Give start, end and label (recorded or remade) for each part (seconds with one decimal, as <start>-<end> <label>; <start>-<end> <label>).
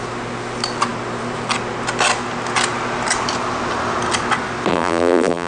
0.0-4.7 recorded; 4.7-5.5 remade